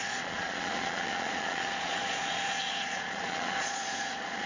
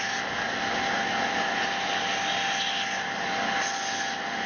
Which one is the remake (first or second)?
first